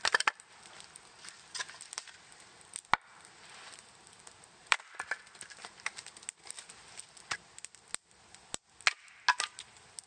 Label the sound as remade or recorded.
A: recorded